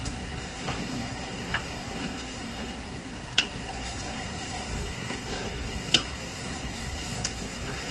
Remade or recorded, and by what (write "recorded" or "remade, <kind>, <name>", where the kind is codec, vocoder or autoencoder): remade, codec, SNAC